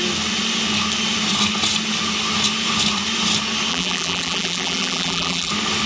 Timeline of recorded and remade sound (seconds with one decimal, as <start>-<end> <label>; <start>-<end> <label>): 0.0-3.7 recorded; 3.7-5.5 remade; 5.5-5.9 recorded